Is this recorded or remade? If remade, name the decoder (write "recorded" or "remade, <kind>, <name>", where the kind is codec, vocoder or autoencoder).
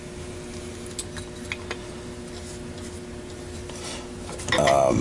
recorded